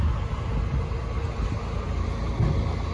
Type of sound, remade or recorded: recorded